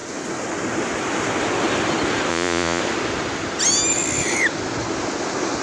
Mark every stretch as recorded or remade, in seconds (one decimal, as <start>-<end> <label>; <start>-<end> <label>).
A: 0.0-2.3 recorded; 2.3-2.8 remade; 2.8-5.6 recorded